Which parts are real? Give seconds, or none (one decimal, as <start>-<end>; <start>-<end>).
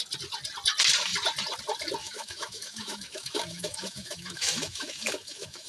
0.0-2.0